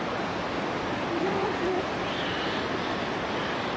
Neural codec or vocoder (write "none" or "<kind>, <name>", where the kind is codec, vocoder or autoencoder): none